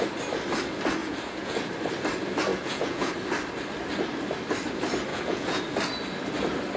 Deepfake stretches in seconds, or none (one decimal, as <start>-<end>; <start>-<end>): 1.0-1.7; 2.5-3.1; 5.1-5.6